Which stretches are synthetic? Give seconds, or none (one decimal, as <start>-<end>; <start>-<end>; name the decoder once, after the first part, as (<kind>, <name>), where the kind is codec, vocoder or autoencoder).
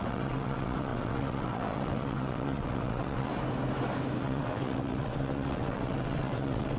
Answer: 0.0-3.3 (vocoder, WaveNeXt); 4.2-6.8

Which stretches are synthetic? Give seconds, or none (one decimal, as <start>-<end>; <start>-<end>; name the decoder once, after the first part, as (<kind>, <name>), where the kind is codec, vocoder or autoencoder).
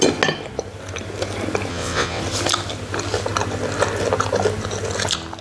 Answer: 1.7-2.2 (vocoder, WaveNeXt)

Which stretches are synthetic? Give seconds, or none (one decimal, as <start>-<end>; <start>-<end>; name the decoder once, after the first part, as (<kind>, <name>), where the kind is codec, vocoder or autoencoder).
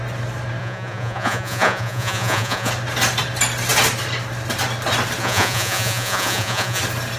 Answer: 0.6-2.7 (vocoder, Vocos); 5.2-6.8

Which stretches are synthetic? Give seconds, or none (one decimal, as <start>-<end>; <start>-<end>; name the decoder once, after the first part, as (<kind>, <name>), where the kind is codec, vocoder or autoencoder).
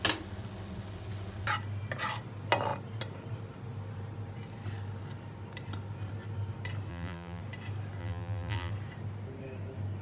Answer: 6.9-7.4 (vocoder, BigVGAN v2); 8.0-8.7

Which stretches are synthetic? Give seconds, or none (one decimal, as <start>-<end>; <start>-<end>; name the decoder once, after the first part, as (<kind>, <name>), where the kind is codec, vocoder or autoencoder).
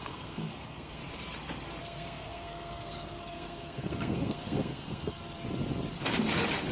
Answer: 0.0-1.0 (codec, SNAC); 1.8-5.2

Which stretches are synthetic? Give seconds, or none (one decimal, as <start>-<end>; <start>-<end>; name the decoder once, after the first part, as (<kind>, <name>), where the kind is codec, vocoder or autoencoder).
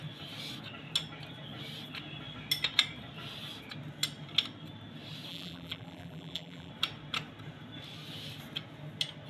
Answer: 5.3-6.7 (vocoder, BigVGAN v2)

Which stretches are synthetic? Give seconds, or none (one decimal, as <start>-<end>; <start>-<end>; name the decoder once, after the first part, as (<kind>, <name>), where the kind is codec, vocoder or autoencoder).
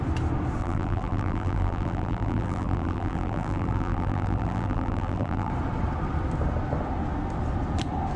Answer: 0.6-5.5 (vocoder, BigVGAN v2)